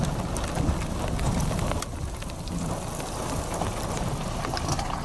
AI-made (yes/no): no